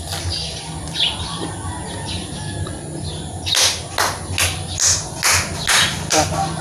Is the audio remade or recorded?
recorded